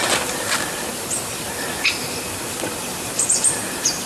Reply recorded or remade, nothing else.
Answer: recorded